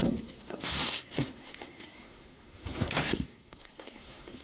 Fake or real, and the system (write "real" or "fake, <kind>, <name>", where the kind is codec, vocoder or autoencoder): fake, codec, SNAC